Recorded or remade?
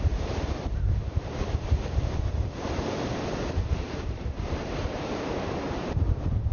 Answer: remade